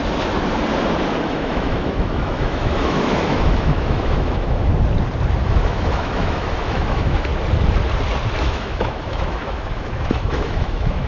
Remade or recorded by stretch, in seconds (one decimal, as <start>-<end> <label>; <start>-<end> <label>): 0.0-1.2 recorded; 1.2-4.7 remade; 4.7-5.4 recorded; 5.4-7.3 remade; 7.3-8.4 recorded; 8.4-11.1 remade